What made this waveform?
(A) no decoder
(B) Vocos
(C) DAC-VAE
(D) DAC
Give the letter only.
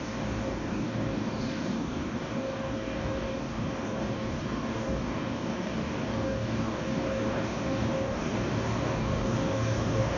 D